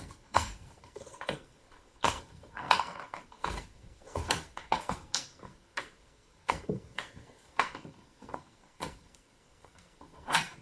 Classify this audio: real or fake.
fake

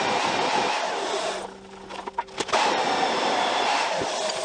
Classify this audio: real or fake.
real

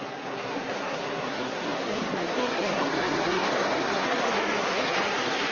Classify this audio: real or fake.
fake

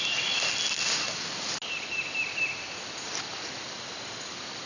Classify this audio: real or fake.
real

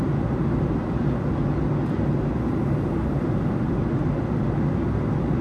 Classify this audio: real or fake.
real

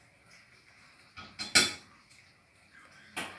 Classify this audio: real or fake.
real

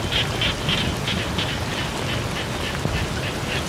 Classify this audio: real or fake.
real